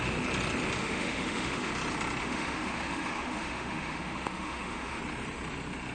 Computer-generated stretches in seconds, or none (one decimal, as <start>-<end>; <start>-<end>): 0.8-1.7; 2.2-5.0